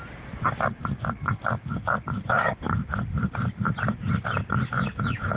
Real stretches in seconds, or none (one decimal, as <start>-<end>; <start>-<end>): 0.0-5.4